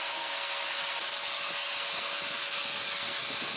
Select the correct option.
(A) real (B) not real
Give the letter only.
B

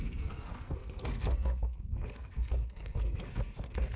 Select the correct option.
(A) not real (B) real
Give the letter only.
A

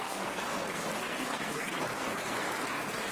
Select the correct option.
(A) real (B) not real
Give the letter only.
B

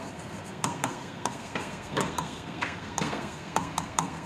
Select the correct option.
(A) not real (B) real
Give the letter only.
A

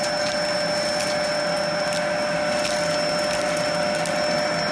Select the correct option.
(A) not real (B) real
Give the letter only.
B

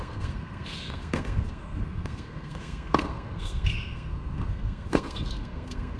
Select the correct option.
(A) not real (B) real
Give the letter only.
A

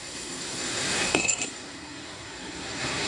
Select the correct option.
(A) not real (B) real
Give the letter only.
A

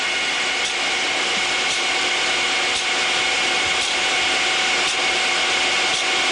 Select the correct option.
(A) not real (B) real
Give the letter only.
B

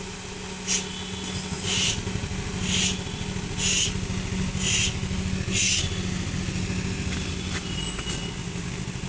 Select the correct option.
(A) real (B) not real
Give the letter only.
A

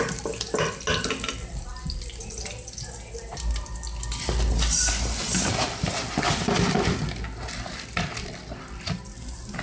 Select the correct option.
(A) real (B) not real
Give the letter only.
A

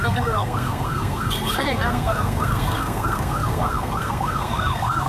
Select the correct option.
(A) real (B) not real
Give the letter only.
B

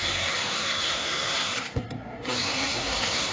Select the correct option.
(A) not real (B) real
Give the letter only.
A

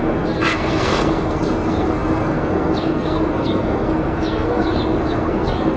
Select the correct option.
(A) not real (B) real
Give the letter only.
A